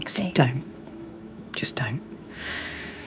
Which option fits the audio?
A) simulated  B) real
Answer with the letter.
A